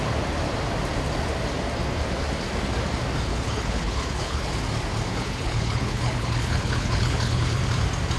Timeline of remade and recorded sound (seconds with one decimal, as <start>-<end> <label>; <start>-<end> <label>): 0.0-3.3 recorded; 3.3-4.5 remade; 4.5-5.1 recorded; 5.1-7.6 remade; 7.6-8.2 recorded